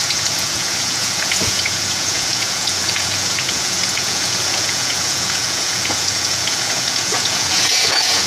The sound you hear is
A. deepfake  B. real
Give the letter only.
A